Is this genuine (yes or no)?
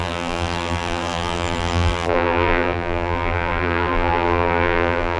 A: no